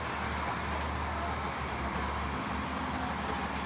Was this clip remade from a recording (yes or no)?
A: no